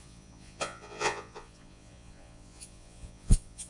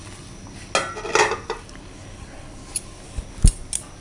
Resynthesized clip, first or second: first